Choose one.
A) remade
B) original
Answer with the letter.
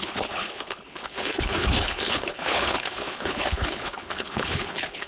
A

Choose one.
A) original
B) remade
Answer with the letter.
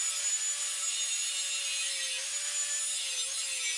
A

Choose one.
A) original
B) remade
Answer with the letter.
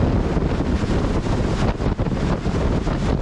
A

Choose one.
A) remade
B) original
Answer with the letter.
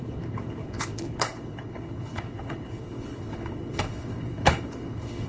A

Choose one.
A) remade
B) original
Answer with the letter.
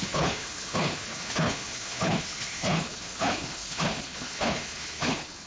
A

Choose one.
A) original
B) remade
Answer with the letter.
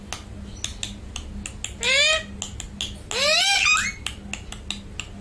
A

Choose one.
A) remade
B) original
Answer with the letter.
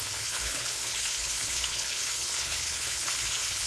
A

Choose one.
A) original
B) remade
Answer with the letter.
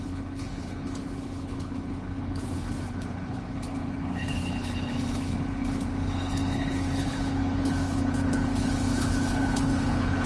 B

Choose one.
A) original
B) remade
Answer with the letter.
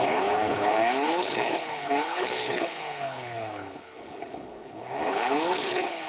B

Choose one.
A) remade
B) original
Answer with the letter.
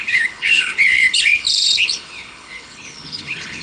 A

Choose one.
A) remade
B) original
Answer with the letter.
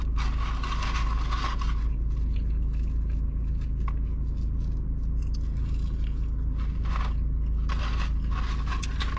B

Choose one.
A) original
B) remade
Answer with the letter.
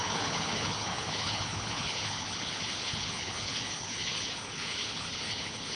B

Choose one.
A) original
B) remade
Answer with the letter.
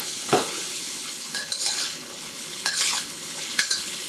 B